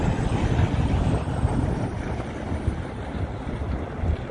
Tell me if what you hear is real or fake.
real